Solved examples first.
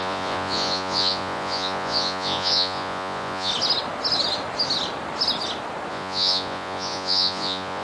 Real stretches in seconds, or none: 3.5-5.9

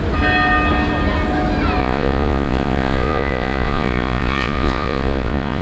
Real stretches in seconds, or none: 0.0-1.8